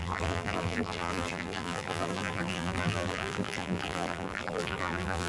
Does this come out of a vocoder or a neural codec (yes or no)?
yes